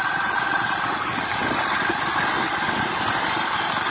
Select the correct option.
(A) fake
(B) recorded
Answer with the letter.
B